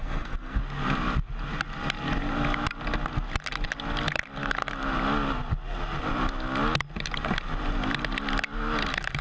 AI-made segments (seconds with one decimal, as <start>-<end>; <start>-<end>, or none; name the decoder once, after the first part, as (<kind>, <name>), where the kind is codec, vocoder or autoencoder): 0.0-0.6 (codec, SNAC)